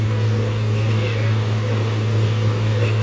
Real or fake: fake